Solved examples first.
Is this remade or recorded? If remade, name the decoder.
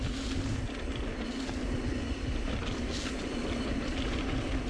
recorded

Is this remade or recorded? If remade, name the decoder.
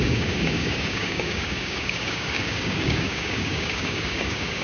remade, codec, DAC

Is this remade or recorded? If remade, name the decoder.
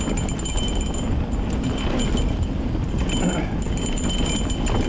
recorded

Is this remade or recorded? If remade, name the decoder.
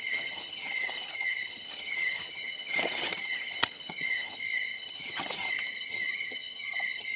remade, vocoder, HiFi-GAN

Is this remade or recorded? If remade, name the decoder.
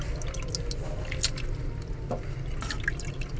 recorded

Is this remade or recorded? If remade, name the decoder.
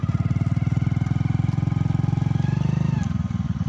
recorded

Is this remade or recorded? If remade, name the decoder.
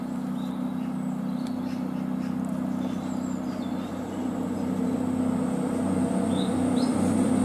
recorded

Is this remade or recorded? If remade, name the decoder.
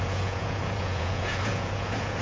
remade, vocoder, Vocos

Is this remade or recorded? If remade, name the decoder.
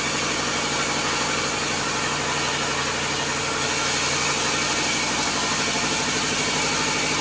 recorded